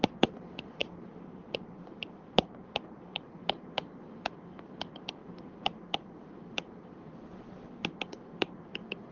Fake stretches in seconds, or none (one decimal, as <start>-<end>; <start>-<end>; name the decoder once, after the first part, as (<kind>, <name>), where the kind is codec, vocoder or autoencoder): 0.8-3.8 (vocoder, BigVGAN v2); 5.2-8.6